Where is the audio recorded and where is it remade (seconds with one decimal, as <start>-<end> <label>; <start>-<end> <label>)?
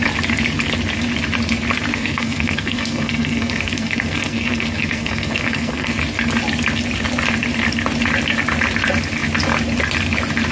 0.0-1.9 recorded; 1.9-6.0 remade; 6.0-10.5 recorded